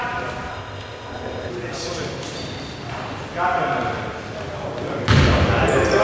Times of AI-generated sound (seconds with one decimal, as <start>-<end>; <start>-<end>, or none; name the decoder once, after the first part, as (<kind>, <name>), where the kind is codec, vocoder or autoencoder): 0.5-1.5 (codec, ZipCodec)